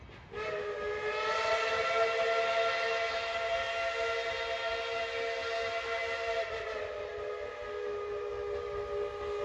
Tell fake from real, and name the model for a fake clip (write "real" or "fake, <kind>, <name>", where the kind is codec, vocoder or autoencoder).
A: real